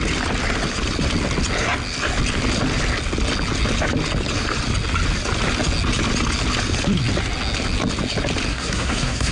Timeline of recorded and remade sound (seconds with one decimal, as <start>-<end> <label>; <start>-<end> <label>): 0.0-8.5 recorded; 8.5-9.3 remade